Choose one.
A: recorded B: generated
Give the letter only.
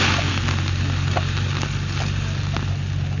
A